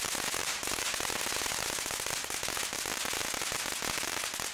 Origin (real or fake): real